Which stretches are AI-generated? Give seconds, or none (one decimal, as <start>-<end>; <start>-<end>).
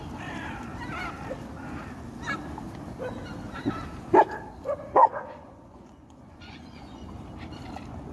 5.0-7.1